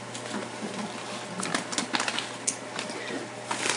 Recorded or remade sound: recorded